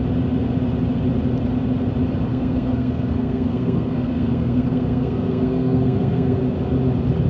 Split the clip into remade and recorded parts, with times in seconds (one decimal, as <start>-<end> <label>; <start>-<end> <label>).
0.0-2.3 recorded; 2.3-6.4 remade; 6.4-7.3 recorded